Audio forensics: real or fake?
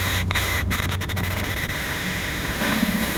fake